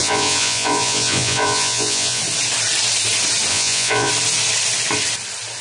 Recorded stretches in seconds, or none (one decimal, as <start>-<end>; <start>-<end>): 2.2-3.5; 4.1-5.6